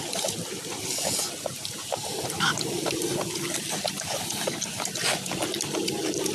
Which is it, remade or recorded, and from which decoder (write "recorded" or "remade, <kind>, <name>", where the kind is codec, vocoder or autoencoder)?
recorded